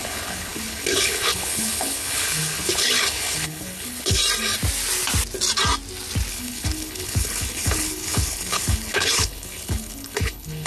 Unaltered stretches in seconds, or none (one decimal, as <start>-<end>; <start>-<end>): 4.2-6.3